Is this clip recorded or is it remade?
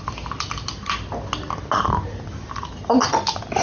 recorded